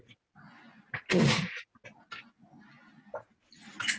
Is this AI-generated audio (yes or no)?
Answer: no